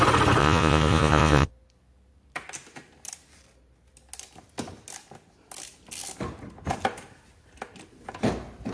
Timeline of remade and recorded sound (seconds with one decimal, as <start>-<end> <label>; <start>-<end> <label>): 0.0-0.4 recorded; 0.4-1.5 remade; 1.5-8.7 recorded